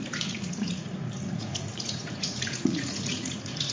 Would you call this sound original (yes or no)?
no